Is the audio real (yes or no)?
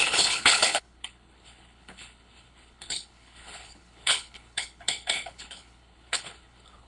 no